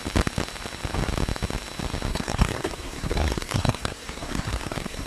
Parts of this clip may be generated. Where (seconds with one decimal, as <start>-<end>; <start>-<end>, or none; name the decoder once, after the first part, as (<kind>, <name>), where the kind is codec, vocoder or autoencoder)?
2.1-5.1 (codec, SNAC)